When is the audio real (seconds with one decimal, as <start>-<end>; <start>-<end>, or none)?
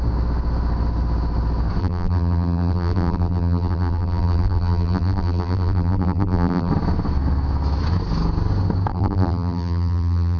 0.0-1.8; 6.7-8.9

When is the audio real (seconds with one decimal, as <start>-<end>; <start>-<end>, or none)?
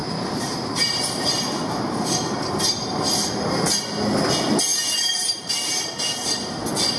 3.2-4.7; 5.5-7.0